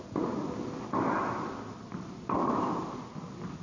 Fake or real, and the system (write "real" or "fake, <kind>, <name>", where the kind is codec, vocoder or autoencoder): real